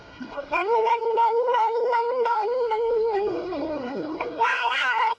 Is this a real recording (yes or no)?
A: no